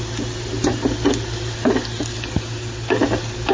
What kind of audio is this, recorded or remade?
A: recorded